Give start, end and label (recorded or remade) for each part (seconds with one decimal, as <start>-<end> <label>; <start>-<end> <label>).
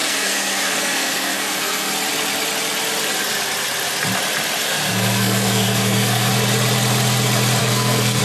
0.0-1.9 remade; 1.9-4.6 recorded; 4.6-6.3 remade; 6.3-7.6 recorded; 7.6-8.2 remade